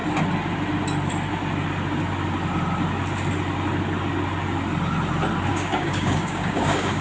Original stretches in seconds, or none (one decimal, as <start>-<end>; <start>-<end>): 0.0-5.5